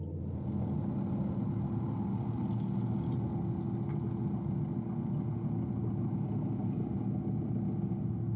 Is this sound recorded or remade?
recorded